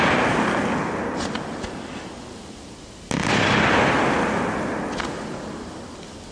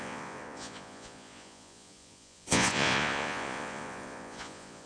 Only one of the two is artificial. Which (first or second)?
second